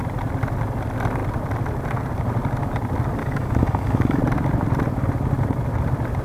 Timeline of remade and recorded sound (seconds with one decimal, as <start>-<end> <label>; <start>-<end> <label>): 0.0-3.2 recorded; 3.2-4.2 remade; 4.2-6.2 recorded